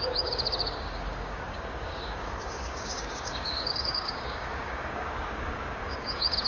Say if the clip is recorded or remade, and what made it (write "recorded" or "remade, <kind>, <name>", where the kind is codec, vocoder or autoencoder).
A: remade, codec, DAC